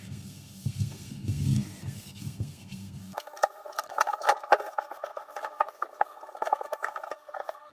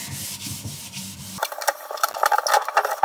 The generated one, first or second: first